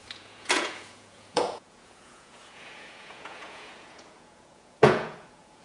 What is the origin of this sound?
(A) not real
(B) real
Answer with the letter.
A